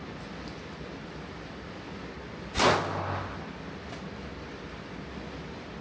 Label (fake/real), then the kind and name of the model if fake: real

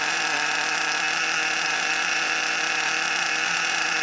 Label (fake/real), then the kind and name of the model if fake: fake, vocoder, BigVGAN v2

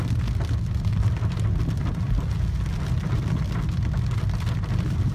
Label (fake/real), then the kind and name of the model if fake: real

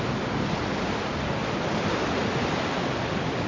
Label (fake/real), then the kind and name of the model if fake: real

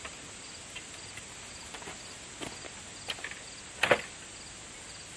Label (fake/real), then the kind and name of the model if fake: real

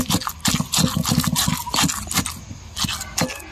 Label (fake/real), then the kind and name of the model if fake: real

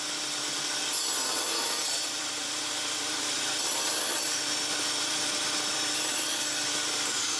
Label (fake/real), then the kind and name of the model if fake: fake, vocoder, BigVGAN v2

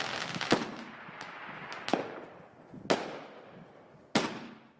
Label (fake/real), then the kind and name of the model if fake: real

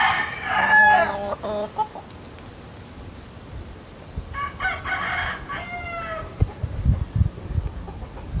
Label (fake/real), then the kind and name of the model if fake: real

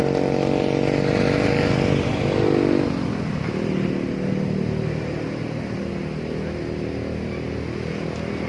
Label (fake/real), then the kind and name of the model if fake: real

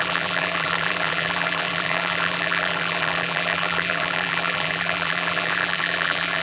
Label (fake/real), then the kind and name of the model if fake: fake, vocoder, BigVGAN v2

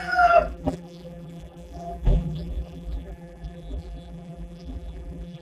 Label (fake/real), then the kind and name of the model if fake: fake, vocoder, BigVGAN v2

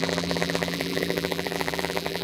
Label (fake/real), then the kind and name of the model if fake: fake, vocoder, BigVGAN v2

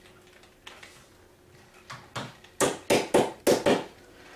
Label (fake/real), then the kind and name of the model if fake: real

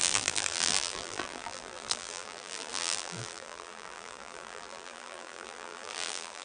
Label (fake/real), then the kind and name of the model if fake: fake, vocoder, BigVGAN v2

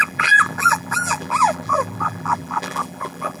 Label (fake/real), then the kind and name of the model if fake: fake, vocoder, BigVGAN v2